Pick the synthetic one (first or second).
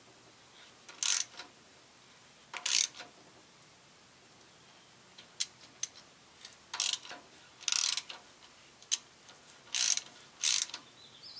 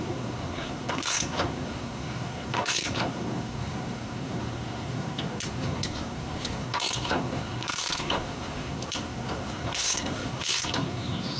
second